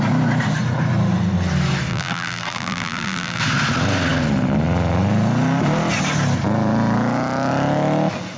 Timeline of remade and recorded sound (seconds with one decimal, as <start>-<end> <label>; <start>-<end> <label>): 0.0-1.9 recorded; 1.9-3.4 remade; 3.4-8.4 recorded